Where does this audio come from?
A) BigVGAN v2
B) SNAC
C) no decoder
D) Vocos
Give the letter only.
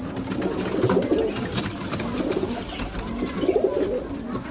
C